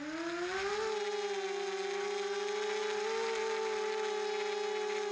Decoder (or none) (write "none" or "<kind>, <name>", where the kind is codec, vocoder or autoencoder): none